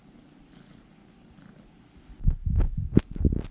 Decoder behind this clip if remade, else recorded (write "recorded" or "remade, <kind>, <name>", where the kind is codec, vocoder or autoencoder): recorded